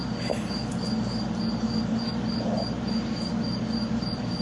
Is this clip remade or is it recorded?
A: recorded